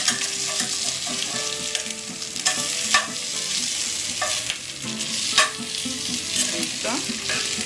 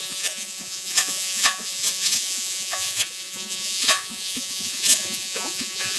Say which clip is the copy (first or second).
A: second